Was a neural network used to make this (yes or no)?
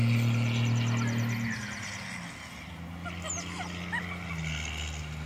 no